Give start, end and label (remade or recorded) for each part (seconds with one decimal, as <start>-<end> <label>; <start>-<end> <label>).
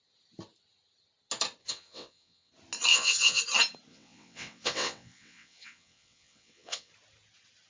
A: 0.0-1.6 recorded; 1.6-2.5 remade; 2.5-2.9 recorded; 2.9-3.4 remade; 3.4-3.9 recorded; 3.9-6.9 remade; 6.9-7.7 recorded